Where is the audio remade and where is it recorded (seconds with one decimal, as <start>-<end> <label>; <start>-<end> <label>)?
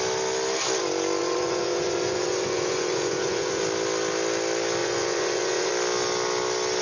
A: 0.0-1.2 recorded; 1.2-3.6 remade; 3.6-4.8 recorded; 4.8-5.7 remade; 5.7-6.8 recorded